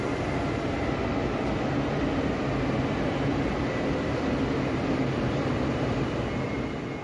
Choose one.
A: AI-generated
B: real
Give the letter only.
B